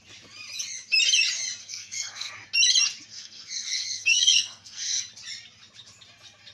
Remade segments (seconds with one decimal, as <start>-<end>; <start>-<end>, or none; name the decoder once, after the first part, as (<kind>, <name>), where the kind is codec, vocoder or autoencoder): 1.6-2.3 (codec, SNAC); 3.1-5.0